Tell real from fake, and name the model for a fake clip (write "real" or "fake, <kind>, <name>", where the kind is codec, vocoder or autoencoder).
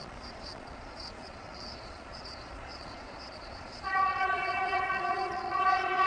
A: fake, vocoder, Vocos